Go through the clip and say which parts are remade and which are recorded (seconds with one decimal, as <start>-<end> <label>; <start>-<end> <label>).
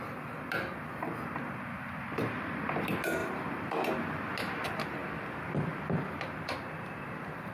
0.0-3.2 recorded; 3.2-3.9 remade; 3.9-7.5 recorded